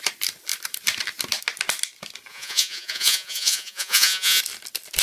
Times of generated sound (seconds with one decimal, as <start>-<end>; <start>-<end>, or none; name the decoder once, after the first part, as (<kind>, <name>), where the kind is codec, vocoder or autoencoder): 2.3-4.4 (vocoder, Vocos)